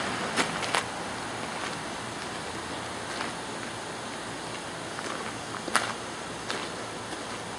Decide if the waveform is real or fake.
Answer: real